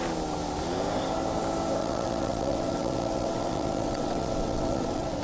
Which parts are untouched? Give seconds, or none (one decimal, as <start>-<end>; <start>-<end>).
0.0-1.8